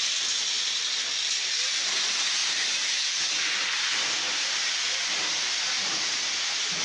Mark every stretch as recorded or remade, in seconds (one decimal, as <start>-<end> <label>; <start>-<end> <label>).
0.0-6.8 recorded

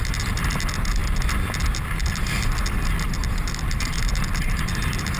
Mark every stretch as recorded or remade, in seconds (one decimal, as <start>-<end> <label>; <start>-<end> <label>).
0.0-5.2 recorded

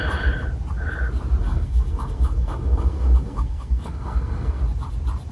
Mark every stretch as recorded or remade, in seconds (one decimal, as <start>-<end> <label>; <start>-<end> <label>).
0.0-1.4 recorded; 1.4-4.6 remade; 4.6-5.3 recorded